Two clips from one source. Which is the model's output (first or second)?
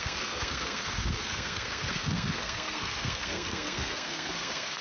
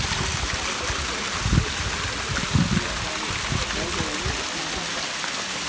first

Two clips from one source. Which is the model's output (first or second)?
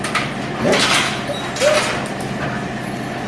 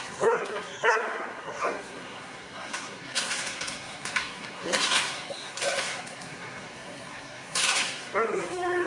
second